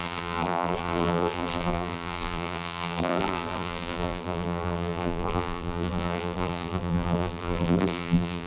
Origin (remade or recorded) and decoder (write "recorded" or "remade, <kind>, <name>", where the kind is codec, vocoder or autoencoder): remade, vocoder, BigVGAN v2